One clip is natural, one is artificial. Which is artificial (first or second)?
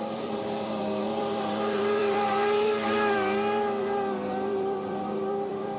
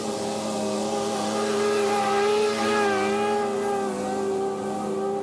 first